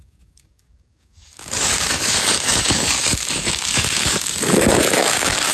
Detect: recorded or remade remade